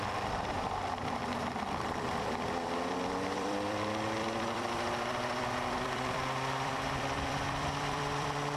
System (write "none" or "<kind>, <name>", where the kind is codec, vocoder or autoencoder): vocoder, BigVGAN v2